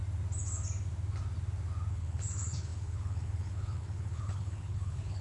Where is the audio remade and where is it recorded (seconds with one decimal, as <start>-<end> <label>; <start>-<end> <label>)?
0.0-1.9 recorded; 1.9-5.2 remade